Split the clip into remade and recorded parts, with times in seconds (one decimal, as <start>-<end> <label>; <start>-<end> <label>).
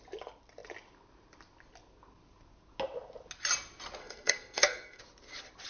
0.0-4.0 recorded; 4.0-5.0 remade; 5.0-5.7 recorded